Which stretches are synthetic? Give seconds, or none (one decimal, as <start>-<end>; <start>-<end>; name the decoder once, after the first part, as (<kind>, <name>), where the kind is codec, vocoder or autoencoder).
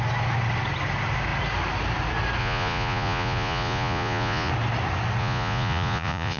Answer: 2.4-4.5 (vocoder, Vocos); 5.2-6.4